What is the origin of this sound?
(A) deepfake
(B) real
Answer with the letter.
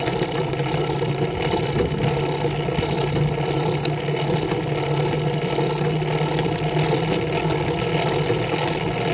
B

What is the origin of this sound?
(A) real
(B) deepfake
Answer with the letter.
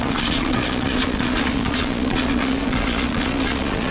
B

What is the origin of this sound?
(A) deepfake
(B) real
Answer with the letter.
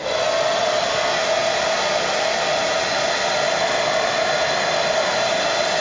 B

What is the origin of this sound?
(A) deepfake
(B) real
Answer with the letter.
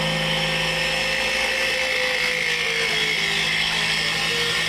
B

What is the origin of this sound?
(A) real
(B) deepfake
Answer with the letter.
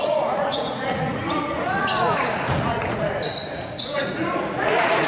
B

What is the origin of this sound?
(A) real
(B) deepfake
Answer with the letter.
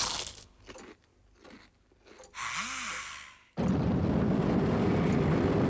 A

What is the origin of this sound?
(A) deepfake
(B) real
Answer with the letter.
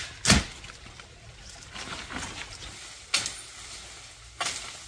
B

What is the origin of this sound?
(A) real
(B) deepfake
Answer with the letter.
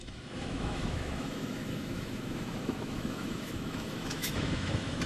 B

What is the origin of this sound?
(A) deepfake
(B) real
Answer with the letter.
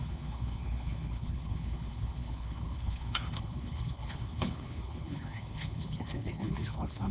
A